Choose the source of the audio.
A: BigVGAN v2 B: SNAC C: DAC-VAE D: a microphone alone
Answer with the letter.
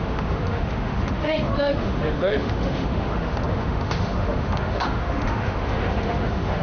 C